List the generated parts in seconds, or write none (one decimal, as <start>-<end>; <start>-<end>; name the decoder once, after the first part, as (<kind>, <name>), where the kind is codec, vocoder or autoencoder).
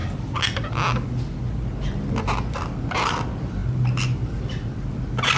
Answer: none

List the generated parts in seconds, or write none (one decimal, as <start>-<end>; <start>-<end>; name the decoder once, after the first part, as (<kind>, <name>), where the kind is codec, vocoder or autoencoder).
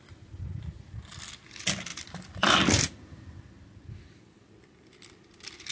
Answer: 1.9-5.3 (vocoder, BigVGAN v2)